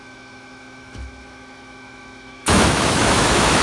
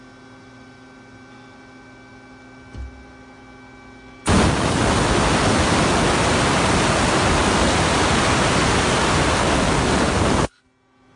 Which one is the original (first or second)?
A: second